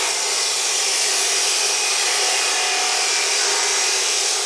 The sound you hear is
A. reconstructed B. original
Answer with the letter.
B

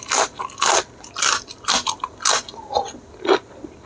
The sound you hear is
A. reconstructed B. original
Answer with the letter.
B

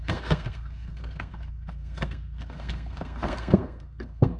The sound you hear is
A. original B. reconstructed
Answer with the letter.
B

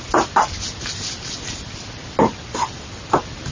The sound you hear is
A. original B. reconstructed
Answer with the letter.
A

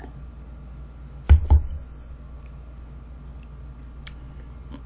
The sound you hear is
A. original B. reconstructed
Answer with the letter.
A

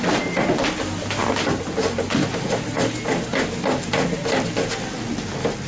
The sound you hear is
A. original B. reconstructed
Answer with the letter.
A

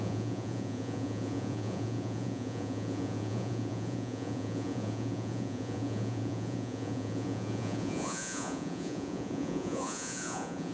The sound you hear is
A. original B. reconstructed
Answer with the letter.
B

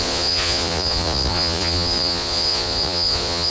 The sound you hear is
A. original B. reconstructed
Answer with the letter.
B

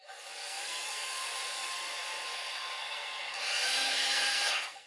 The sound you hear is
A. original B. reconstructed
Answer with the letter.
B